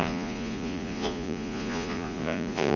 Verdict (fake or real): fake